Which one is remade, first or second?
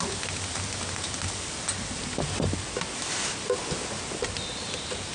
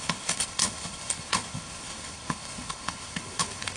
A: second